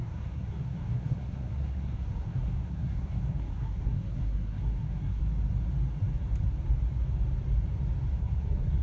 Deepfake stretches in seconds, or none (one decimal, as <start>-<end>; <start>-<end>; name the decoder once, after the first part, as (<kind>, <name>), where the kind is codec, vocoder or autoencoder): 0.0-5.2 (codec, SNAC); 8.2-8.8